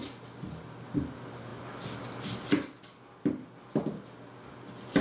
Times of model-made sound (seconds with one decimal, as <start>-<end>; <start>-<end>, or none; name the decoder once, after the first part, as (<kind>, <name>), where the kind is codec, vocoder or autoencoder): none